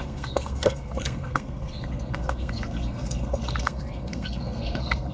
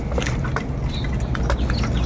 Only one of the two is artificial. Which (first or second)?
first